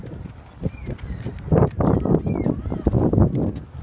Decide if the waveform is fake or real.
real